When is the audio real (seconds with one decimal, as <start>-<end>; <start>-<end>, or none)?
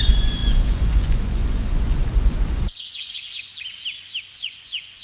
3.5-4.3